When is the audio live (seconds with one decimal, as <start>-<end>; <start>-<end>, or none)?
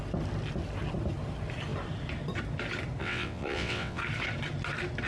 0.0-3.0; 4.0-5.1